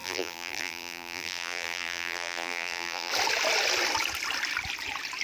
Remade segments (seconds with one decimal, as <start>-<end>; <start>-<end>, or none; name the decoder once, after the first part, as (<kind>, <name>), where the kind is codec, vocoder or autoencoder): 0.0-3.1 (vocoder, BigVGAN v2)